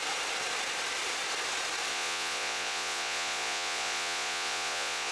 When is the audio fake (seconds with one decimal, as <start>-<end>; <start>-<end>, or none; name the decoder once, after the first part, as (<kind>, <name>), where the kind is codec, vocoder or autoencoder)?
1.9-5.1 (vocoder, Vocos)

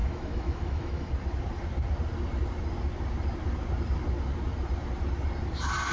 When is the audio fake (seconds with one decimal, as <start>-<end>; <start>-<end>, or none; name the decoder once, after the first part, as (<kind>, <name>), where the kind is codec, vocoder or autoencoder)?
0.0-1.1 (autoencoder, DAC-VAE)

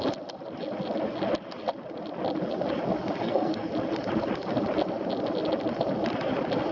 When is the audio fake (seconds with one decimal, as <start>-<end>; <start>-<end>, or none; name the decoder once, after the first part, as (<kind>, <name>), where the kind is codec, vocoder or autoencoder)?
3.2-3.7 (codec, SNAC)

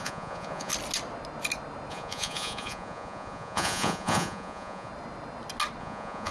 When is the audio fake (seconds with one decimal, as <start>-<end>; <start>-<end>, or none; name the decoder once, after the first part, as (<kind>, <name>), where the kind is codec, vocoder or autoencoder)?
0.0-0.7 (vocoder, Vocos); 1.9-4.9; 5.8-6.3

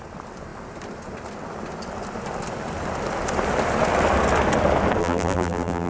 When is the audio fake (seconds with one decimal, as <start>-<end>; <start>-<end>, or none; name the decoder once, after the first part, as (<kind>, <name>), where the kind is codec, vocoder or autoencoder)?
5.0-5.9 (vocoder, BigVGAN v2)